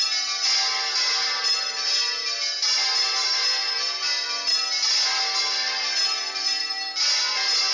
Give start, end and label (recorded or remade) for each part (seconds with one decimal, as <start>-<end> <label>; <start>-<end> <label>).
0.0-7.7 recorded